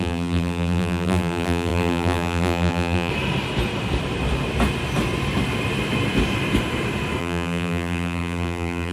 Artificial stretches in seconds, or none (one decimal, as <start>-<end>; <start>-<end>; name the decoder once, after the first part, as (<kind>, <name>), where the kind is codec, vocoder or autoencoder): 0.0-3.1 (vocoder, BigVGAN v2); 7.2-8.9